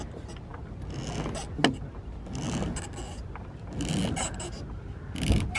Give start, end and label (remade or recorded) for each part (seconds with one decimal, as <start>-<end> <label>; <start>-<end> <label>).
0.0-5.6 recorded